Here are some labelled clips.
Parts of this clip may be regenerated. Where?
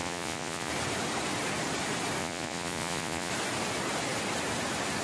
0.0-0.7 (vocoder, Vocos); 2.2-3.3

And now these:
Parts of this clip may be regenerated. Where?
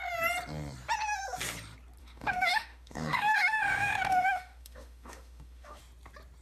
2.0-5.8 (autoencoder, DAC-VAE)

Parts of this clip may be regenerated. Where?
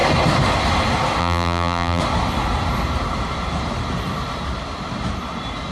1.2-2.0 (vocoder, BigVGAN v2)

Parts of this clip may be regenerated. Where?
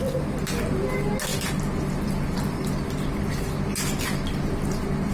none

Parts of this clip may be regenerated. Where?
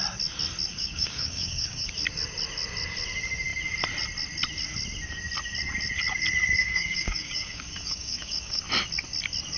0.7-1.9 (codec, DAC); 6.6-8.6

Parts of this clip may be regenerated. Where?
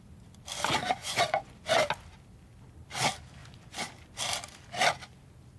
1.0-1.6 (vocoder, Vocos); 3.4-3.9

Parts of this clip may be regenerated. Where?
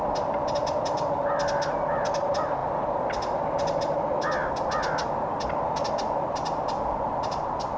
none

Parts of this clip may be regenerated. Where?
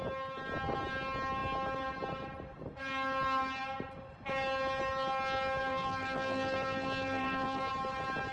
5.6-7.7 (vocoder, BigVGAN v2)